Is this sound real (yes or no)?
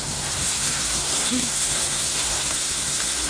no